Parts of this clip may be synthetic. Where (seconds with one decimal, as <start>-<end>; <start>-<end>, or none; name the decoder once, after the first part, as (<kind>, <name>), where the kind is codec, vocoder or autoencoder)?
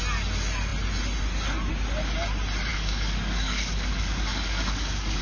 2.7-5.2 (codec, DAC)